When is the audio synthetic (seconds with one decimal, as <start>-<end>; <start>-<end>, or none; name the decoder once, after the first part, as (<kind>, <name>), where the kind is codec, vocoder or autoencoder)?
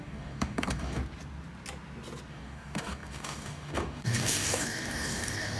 0.0-1.0 (codec, DAC); 2.3-5.6